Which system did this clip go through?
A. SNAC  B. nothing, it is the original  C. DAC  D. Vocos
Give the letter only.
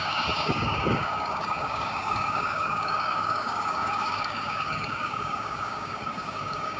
C